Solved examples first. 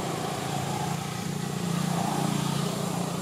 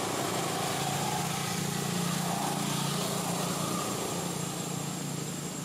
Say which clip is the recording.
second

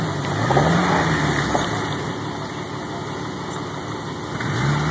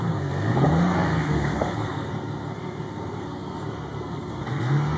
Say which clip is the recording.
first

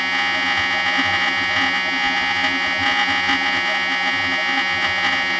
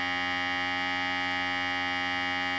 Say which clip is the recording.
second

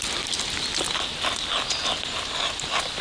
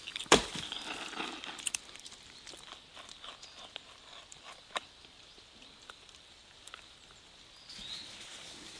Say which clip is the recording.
first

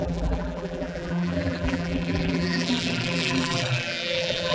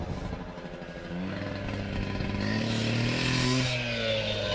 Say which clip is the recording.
second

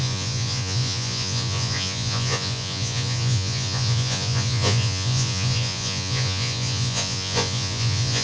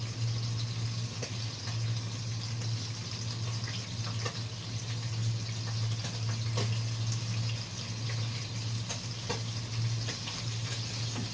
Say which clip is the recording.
second